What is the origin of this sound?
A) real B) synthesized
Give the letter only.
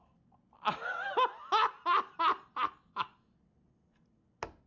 A